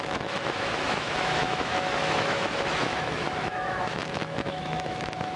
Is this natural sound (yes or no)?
no